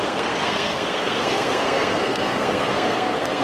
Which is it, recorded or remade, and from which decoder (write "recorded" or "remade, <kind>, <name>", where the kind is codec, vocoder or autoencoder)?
remade, codec, SNAC